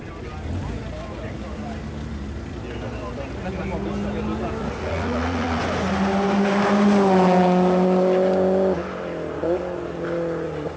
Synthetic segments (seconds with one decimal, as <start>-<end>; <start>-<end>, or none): 4.6-5.6